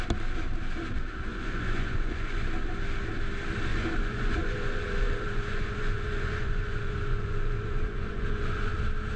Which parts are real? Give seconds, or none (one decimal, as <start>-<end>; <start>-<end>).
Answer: 0.0-1.3; 2.4-3.7; 8.7-9.2